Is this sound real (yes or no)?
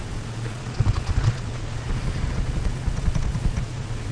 no